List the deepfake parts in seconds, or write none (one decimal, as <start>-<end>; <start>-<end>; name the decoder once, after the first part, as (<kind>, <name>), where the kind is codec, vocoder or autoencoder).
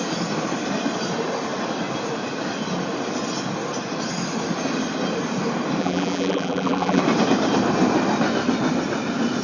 5.8-7.0 (vocoder, BigVGAN v2)